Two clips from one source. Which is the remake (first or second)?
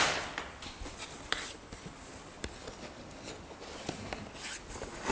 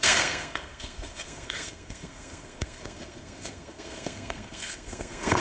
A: second